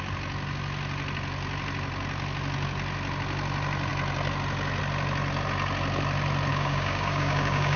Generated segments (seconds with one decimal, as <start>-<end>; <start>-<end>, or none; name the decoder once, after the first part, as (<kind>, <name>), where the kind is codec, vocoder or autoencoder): 6.5-7.8 (codec, DAC)